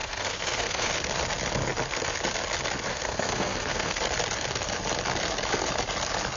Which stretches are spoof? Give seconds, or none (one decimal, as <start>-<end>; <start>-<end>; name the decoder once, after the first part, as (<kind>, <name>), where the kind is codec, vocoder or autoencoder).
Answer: 0.0-0.9 (codec, SNAC); 2.9-4.0